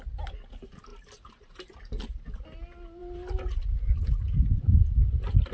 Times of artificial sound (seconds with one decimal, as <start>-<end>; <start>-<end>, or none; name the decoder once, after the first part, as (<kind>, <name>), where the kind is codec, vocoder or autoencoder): 0.9-2.4 (vocoder, BigVGAN v2)